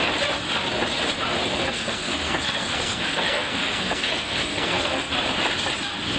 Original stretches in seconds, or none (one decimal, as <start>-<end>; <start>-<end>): 0.0-1.4; 5.1-6.2